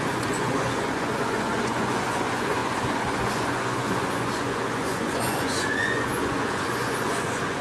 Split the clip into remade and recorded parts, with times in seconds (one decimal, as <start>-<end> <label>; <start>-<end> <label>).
0.0-7.6 remade